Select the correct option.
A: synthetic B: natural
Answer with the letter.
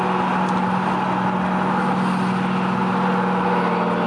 B